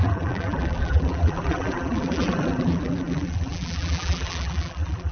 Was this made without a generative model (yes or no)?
no